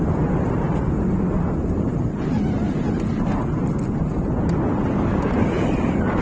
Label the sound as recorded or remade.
recorded